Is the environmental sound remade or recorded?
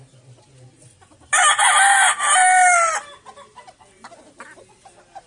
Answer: recorded